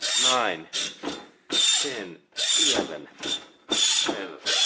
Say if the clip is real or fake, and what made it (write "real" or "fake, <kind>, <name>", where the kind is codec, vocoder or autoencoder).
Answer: real